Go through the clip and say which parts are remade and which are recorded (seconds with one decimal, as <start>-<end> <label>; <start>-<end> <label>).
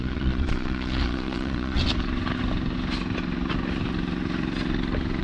0.0-1.8 remade; 1.8-5.2 recorded